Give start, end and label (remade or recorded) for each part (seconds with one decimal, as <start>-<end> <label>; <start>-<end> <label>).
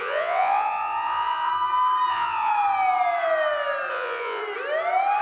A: 0.0-1.5 remade; 1.5-2.1 recorded; 2.1-2.5 remade; 2.5-3.9 recorded; 3.9-4.4 remade; 4.4-5.2 recorded